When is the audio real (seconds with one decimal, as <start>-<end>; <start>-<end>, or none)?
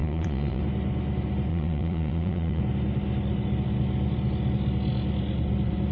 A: 0.6-1.5; 2.6-5.9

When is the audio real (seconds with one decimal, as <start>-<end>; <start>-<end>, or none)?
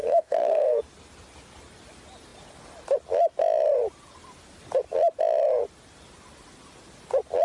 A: 0.8-7.4